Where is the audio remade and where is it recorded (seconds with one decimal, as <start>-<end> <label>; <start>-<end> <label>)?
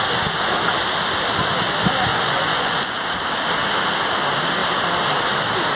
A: 0.0-2.1 recorded; 2.1-3.0 remade; 3.0-5.8 recorded